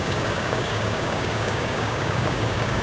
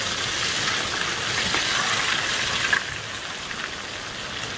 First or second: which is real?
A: second